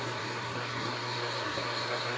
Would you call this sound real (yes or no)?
no